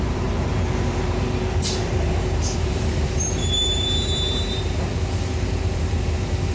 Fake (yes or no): yes